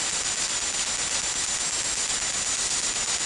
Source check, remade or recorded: recorded